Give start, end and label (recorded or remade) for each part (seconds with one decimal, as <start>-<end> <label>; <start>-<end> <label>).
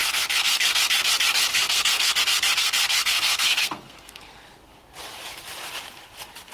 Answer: 0.0-0.8 remade; 0.8-1.5 recorded; 1.5-2.2 remade; 2.2-2.6 recorded; 2.6-4.6 remade; 4.6-6.5 recorded